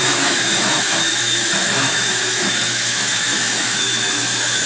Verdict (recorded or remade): remade